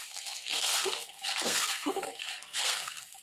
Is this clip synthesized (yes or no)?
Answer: yes